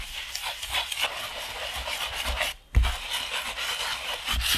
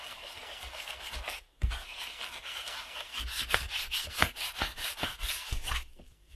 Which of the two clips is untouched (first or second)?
first